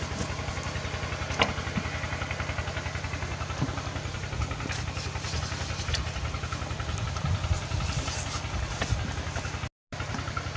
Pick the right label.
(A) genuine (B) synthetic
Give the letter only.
A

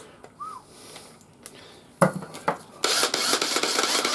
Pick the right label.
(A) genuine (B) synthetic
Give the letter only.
A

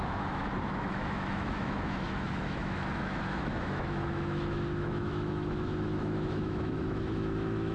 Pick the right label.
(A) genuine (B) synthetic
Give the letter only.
B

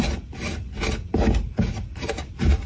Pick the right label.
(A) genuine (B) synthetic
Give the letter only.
A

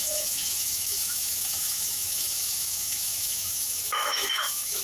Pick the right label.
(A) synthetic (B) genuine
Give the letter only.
A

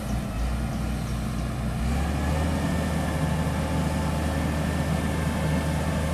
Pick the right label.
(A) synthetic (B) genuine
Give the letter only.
B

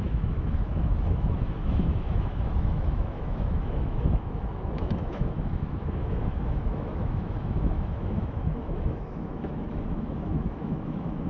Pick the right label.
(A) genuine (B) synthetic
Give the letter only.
B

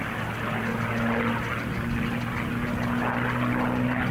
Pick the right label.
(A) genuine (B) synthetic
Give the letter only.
A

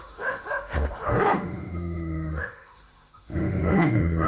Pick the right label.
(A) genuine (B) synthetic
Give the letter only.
B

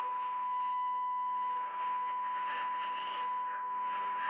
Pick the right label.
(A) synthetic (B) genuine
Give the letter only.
A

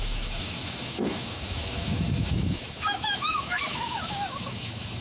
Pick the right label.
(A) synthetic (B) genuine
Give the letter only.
A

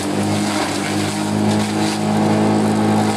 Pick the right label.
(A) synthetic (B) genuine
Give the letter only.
B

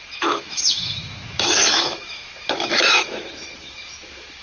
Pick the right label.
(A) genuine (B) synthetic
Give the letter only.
B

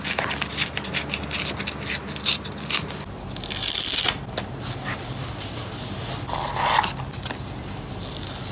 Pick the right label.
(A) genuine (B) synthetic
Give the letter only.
A